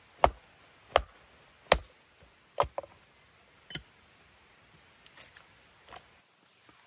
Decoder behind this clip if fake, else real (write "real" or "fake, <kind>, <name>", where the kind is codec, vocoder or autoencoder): real